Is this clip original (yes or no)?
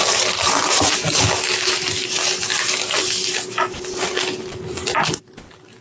yes